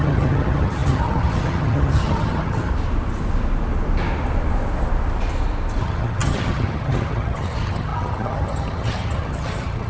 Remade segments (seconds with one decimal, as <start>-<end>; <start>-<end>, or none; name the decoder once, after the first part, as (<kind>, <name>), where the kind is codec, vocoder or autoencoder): 0.0-2.7 (vocoder, HiFi-GAN); 5.8-9.9